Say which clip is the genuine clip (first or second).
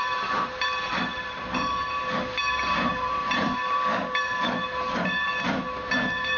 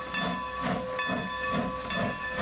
second